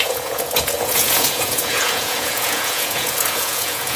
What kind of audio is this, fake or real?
fake